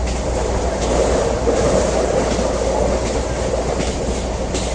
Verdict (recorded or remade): recorded